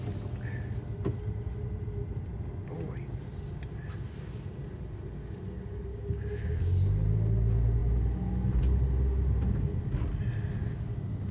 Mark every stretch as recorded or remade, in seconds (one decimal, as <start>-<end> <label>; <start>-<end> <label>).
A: 0.0-5.9 recorded; 5.9-6.6 remade; 6.6-11.3 recorded